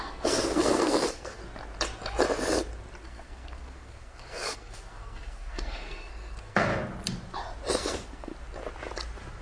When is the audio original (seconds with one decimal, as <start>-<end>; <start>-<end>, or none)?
1.4-3.0; 6.7-7.7; 8.3-9.4